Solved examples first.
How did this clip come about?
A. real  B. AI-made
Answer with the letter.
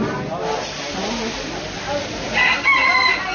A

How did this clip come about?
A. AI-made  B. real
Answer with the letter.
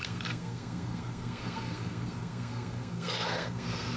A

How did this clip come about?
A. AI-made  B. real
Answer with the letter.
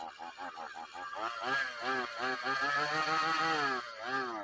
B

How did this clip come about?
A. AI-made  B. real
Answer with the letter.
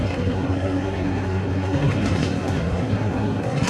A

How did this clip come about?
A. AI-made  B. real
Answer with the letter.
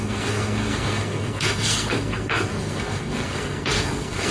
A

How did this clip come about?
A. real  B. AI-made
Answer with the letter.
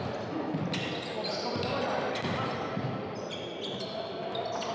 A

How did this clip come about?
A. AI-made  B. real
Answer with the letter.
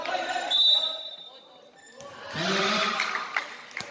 B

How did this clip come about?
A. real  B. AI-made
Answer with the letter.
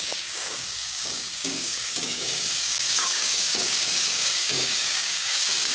B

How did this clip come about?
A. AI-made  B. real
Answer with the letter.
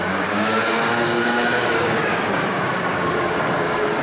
A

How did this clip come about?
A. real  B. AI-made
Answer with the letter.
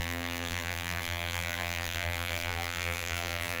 B